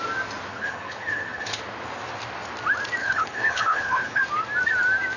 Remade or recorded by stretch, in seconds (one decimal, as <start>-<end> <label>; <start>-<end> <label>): 0.0-0.5 recorded; 0.5-1.6 remade; 1.6-3.0 recorded; 3.0-4.2 remade; 4.2-5.2 recorded